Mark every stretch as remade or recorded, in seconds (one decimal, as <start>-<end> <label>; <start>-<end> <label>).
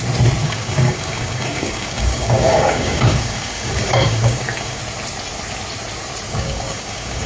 0.0-0.4 recorded; 0.4-4.8 remade; 4.8-6.3 recorded; 6.3-7.3 remade